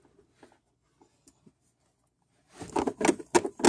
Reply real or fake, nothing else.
real